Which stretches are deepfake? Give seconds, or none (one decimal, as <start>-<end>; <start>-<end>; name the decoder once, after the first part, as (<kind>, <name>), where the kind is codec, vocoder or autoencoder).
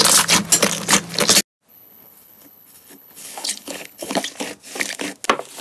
1.7-4.2 (codec, HILCodec)